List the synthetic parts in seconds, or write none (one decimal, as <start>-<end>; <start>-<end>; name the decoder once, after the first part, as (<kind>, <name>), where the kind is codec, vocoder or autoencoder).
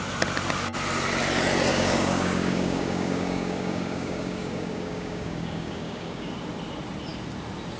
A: 1.7-6.3 (codec, DAC)